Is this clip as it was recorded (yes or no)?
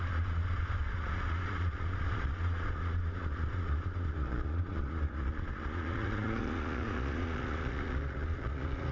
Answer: no